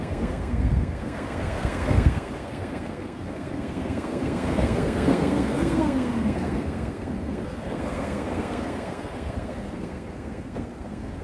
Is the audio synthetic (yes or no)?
yes